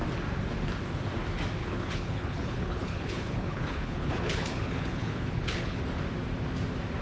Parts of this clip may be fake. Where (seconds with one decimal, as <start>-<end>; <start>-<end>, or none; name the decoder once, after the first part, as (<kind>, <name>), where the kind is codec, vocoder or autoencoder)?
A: 1.6-5.8 (codec, HILCodec)